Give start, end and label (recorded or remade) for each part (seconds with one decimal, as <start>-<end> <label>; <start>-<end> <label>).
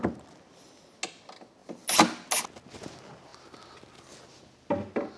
0.0-5.2 recorded